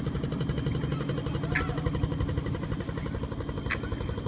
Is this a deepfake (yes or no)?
no